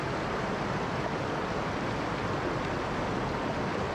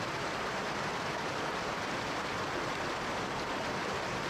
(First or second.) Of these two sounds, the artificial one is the second